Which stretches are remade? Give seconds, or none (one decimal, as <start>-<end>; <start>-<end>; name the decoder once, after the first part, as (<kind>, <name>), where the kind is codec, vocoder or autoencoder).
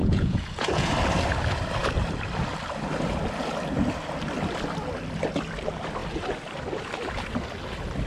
0.0-0.9 (vocoder, Vocos)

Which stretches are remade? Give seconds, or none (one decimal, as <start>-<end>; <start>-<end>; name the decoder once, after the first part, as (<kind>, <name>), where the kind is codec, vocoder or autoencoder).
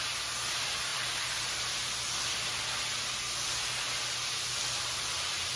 none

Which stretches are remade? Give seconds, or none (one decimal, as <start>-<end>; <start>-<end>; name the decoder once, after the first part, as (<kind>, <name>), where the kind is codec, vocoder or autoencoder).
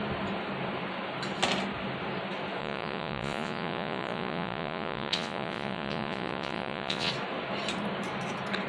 2.6-7.1 (vocoder, Vocos)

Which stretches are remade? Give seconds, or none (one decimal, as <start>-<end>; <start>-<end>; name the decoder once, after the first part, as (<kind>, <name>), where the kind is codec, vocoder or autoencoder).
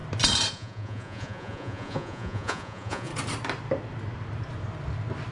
0.5-3.1 (vocoder, Vocos)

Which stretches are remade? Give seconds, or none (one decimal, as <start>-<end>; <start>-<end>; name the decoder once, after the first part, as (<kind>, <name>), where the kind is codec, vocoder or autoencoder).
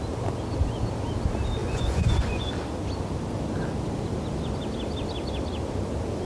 1.6-2.5 (vocoder, Vocos)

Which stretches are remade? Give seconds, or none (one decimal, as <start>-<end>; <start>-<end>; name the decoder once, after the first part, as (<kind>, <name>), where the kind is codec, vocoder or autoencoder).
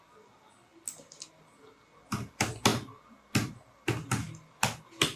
none